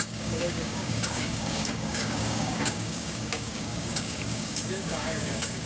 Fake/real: fake